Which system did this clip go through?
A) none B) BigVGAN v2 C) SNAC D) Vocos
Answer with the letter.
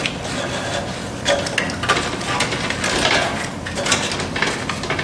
A